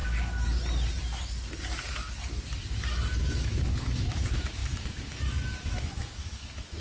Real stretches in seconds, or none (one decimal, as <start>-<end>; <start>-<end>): 0.0-3.2